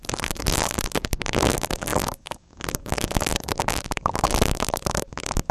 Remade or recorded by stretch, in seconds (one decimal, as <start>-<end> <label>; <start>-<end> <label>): 0.0-5.5 remade